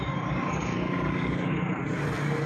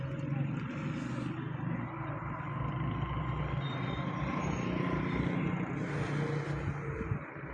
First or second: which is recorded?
second